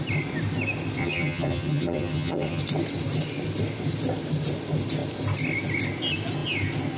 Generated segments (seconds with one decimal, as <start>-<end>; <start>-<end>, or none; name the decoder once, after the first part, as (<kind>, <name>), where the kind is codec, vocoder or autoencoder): 1.0-2.6 (vocoder, HiFi-GAN)